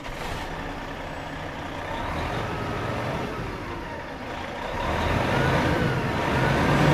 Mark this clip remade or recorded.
recorded